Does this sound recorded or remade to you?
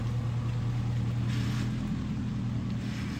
recorded